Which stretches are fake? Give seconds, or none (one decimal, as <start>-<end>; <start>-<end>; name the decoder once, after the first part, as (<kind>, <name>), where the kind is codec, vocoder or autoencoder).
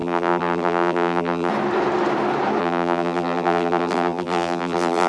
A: 0.0-1.5 (vocoder, BigVGAN v2); 2.6-5.1